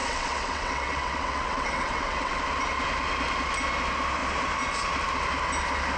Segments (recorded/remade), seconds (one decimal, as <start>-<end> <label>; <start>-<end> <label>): 0.0-2.4 remade; 2.4-6.0 recorded